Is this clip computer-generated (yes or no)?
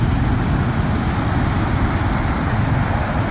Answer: no